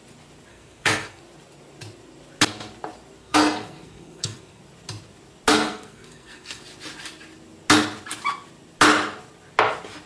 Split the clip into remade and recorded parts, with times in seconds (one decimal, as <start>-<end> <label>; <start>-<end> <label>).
0.0-0.5 recorded; 0.5-1.2 remade; 1.2-3.2 recorded; 3.2-4.6 remade; 4.6-5.5 recorded; 5.5-6.6 remade; 6.6-10.1 recorded